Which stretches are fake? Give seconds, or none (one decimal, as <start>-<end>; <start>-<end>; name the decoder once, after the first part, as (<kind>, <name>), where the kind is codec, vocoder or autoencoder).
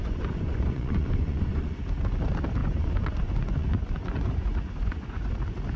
0.0-1.8 (vocoder, Vocos); 2.6-5.3